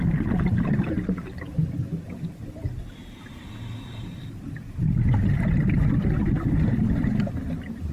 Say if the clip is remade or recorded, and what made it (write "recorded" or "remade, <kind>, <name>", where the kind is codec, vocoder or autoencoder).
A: recorded